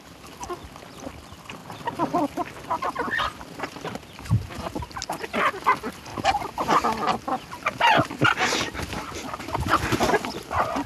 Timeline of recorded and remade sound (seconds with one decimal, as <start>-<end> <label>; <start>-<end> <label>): 0.0-10.9 recorded

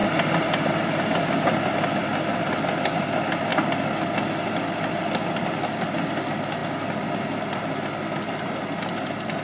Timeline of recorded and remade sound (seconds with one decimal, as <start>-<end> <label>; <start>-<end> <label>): 0.0-9.4 recorded